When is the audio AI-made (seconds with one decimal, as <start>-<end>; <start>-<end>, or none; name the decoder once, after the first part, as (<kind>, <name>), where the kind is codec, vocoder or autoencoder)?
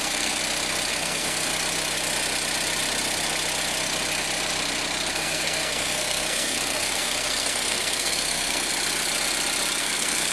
0.0-0.4 (codec, SNAC); 0.9-1.5; 5.1-8.7; 9.8-10.3